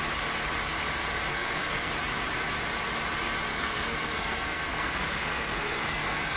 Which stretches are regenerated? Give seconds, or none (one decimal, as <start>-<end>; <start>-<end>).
1.3-1.9; 3.5-6.4